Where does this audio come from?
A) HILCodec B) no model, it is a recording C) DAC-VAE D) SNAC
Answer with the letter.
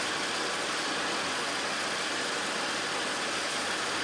B